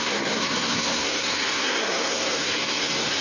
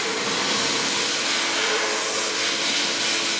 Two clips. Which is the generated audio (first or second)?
first